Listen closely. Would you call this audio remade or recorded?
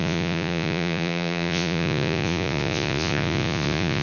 remade